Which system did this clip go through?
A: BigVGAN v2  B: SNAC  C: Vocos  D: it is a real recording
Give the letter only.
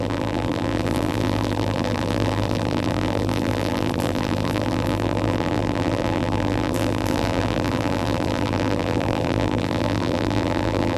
A